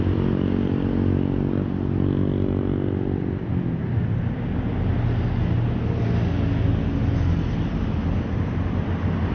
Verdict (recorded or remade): recorded